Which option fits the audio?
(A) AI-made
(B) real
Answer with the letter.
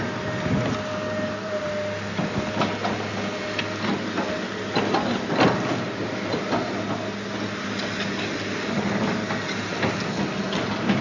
B